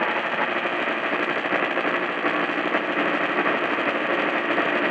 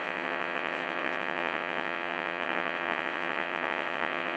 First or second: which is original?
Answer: first